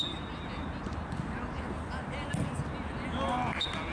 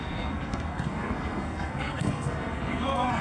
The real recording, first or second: first